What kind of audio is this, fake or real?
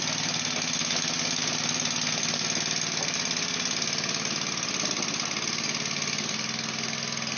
real